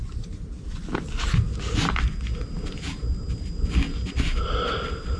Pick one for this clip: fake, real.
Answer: real